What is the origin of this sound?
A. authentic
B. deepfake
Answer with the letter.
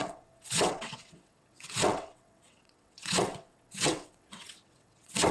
B